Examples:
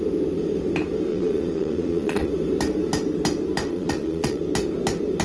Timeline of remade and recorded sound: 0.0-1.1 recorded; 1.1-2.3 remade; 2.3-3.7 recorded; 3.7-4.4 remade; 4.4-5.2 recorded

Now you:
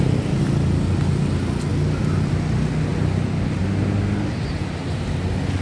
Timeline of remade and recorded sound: 0.0-5.6 recorded

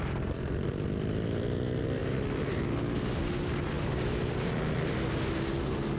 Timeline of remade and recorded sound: 0.0-6.0 recorded

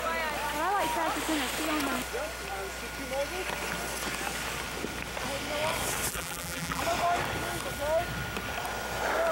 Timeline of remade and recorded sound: 0.0-6.1 recorded; 6.1-6.8 remade; 6.8-9.3 recorded

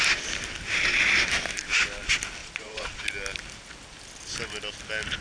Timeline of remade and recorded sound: 0.0-2.4 recorded; 2.4-3.0 remade; 3.0-5.2 recorded

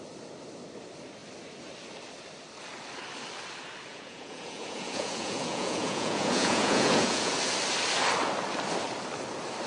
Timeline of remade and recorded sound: 0.0-3.9 recorded; 3.9-7.3 remade; 7.3-9.7 recorded

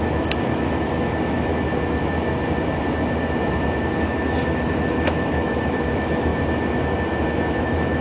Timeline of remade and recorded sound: 0.0-1.5 remade; 1.5-4.0 recorded; 4.0-6.3 remade; 6.3-7.6 recorded; 7.6-8.0 remade